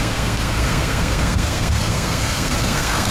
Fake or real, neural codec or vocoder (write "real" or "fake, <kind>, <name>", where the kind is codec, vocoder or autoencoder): fake, codec, SNAC